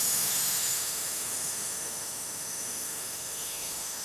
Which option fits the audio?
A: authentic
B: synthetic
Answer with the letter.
B